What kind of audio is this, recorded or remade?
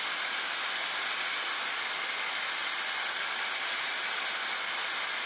recorded